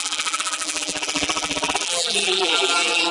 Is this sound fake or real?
fake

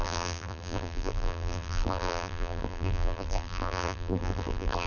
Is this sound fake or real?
fake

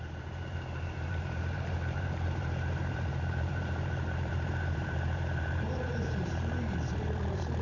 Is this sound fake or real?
fake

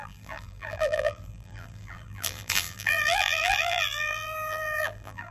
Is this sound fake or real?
fake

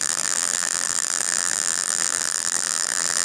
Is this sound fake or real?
fake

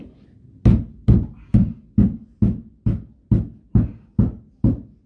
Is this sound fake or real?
real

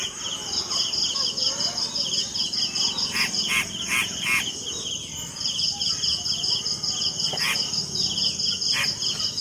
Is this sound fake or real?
real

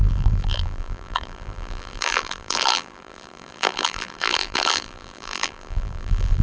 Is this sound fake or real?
fake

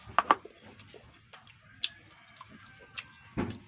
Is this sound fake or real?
real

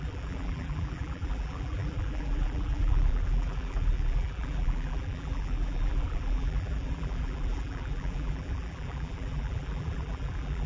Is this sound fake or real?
fake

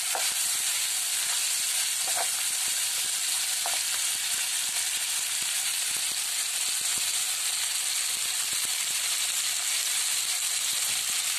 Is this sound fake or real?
real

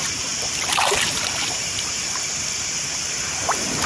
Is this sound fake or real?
fake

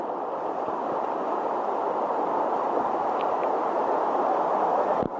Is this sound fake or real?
fake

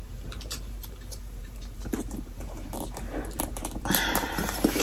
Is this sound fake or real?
fake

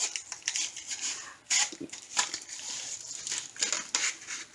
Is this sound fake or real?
real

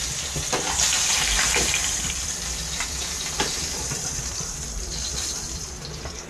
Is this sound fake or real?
fake